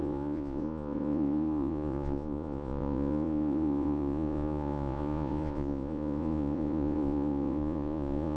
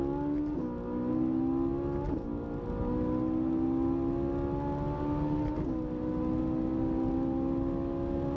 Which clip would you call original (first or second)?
second